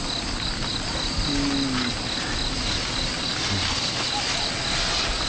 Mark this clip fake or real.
real